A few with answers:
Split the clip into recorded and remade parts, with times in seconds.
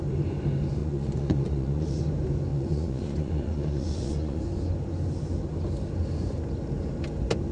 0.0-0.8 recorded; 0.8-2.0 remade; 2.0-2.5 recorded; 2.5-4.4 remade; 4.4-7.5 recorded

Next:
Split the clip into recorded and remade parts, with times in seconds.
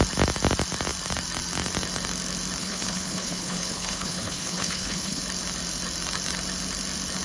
0.0-2.6 recorded; 2.6-5.2 remade; 5.2-7.2 recorded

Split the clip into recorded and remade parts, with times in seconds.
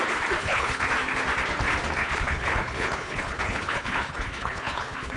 0.0-0.4 recorded; 0.4-0.9 remade; 0.9-2.0 recorded; 2.0-5.2 remade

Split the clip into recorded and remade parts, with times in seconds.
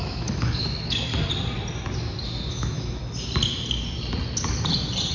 0.0-1.1 remade; 1.1-2.5 recorded; 2.5-3.0 remade; 3.0-5.1 recorded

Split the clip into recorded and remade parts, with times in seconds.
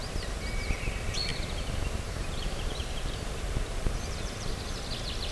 0.0-1.3 recorded; 1.3-4.5 remade; 4.5-5.3 recorded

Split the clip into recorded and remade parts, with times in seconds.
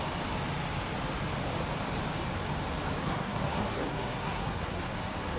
0.0-3.0 recorded; 3.0-4.8 remade; 4.8-5.4 recorded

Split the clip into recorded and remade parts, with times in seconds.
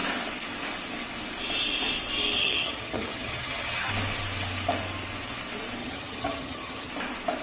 0.0-2.4 recorded; 2.4-3.9 remade; 3.9-5.8 recorded; 5.8-6.9 remade; 6.9-7.4 recorded